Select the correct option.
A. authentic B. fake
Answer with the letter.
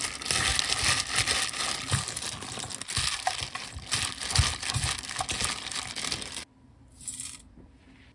A